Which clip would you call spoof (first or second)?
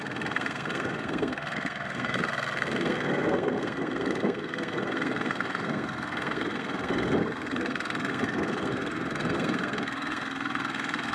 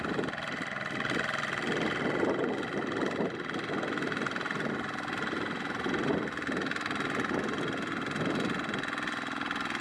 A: first